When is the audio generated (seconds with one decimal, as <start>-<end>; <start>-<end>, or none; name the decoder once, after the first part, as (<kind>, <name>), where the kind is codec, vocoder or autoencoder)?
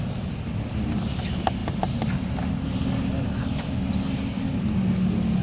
none